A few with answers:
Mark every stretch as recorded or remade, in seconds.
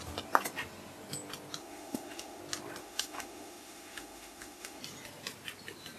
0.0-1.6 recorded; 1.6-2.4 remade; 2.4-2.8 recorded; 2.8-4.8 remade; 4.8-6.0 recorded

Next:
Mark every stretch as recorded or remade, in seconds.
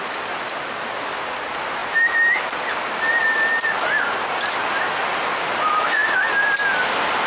0.0-7.3 recorded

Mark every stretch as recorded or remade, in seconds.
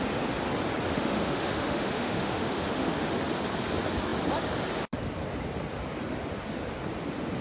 0.0-0.9 recorded; 0.9-2.9 remade; 2.9-7.4 recorded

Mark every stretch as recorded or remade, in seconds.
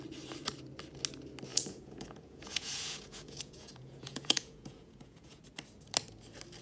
0.0-1.5 recorded; 1.5-5.4 remade; 5.4-6.6 recorded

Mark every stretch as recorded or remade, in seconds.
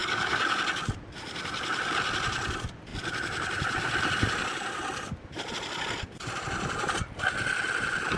0.0-0.6 remade; 0.6-8.2 recorded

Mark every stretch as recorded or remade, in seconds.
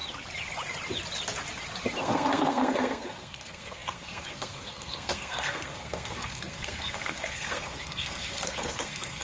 0.0-2.0 recorded; 2.0-9.2 remade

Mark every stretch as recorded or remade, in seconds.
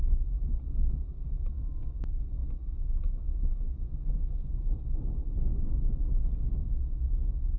0.0-7.6 recorded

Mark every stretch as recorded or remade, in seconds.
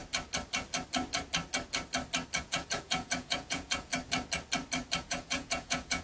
0.0-2.4 recorded; 2.4-3.9 remade; 3.9-5.0 recorded; 5.0-6.0 remade